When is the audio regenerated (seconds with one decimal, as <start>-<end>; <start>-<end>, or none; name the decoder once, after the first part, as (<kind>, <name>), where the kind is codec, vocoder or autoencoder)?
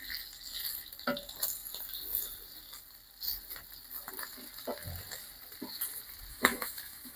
6.3-7.2 (autoencoder, DAC-VAE)